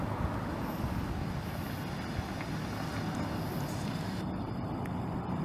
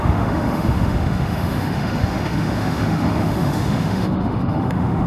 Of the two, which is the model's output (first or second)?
second